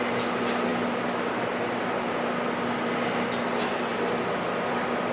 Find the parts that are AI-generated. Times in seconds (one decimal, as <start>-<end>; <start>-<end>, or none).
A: none